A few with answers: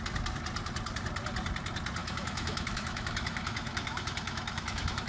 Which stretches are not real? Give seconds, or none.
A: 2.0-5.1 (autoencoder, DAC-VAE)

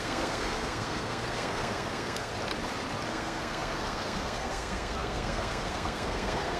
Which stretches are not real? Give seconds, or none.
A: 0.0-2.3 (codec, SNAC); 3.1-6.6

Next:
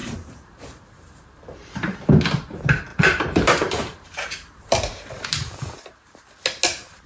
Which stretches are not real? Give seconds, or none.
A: 0.0-2.0 (vocoder, BigVGAN v2); 2.9-5.5

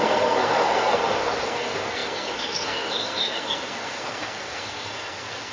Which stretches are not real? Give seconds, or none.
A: 0.0-5.5 (codec, SNAC)

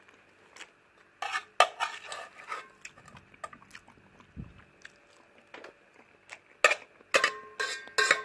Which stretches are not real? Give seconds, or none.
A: none